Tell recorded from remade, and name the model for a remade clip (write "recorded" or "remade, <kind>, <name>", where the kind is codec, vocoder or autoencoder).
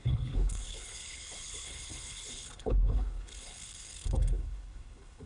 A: remade, codec, HILCodec